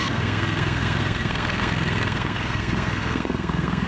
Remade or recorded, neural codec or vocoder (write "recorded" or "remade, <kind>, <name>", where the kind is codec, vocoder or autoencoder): remade, codec, SNAC